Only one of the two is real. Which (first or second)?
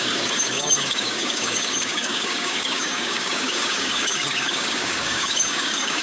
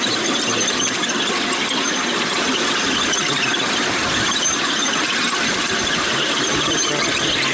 second